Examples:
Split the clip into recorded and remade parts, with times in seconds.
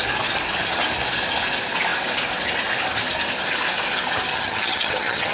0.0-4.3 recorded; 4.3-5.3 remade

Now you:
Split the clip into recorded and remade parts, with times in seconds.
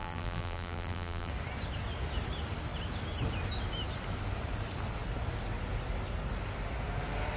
0.0-1.3 remade; 1.3-7.4 recorded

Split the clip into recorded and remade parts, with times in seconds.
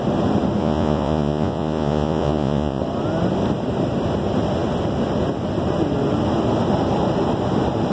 0.0-0.6 recorded; 0.6-2.8 remade; 2.8-7.9 recorded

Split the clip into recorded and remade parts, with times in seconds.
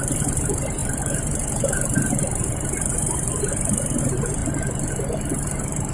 0.0-4.4 remade; 4.4-5.3 recorded; 5.3-5.9 remade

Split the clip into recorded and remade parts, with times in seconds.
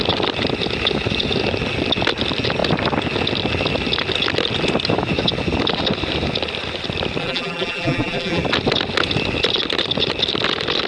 0.0-7.2 recorded; 7.2-8.4 remade; 8.4-10.9 recorded